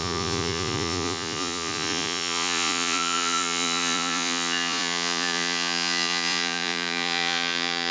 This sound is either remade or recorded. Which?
remade